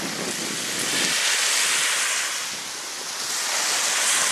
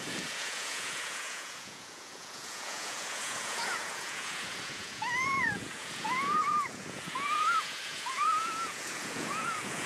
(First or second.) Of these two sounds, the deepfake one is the second